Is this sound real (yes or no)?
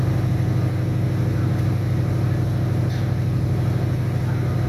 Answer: yes